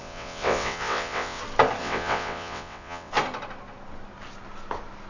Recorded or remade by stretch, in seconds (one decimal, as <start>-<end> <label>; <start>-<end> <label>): 0.0-1.4 remade; 1.4-1.8 recorded; 1.8-3.1 remade; 3.1-5.1 recorded